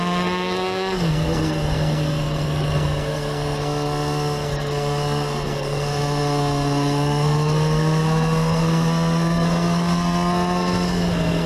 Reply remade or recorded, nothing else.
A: remade